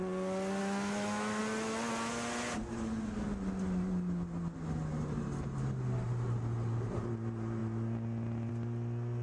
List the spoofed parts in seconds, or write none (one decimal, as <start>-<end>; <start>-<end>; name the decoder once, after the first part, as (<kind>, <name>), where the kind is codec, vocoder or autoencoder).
0.6-1.4 (autoencoder, DAC-VAE)